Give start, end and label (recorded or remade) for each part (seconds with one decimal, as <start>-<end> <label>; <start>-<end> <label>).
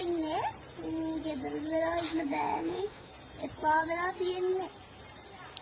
0.0-2.1 recorded; 2.1-3.1 remade; 3.1-5.6 recorded